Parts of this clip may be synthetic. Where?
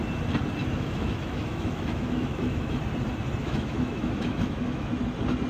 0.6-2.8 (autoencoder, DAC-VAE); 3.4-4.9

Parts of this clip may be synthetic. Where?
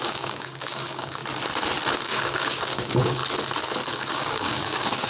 0.0-1.2 (codec, DAC); 2.0-3.2; 3.9-5.1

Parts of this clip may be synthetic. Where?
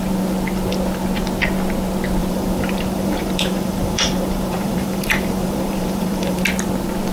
2.2-6.4 (vocoder, BigVGAN v2)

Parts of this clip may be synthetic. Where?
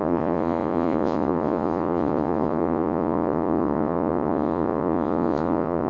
0.0-5.9 (vocoder, Vocos)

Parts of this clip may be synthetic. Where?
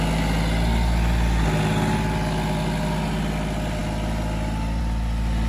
none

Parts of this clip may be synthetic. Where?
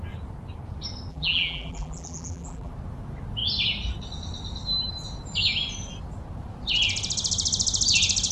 1.1-2.7 (vocoder, BigVGAN v2)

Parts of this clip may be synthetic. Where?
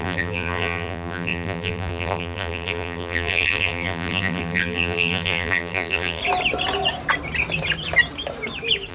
0.0-6.2 (vocoder, BigVGAN v2)